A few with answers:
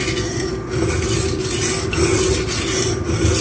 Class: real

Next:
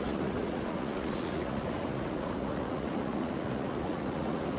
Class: fake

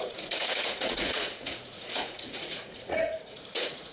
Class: fake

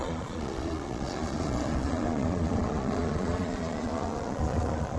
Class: fake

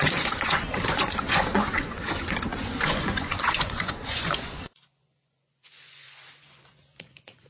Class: fake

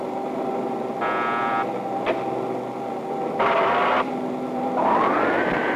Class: real